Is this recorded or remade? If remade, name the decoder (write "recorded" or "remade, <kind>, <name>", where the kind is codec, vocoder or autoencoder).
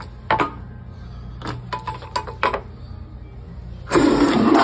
recorded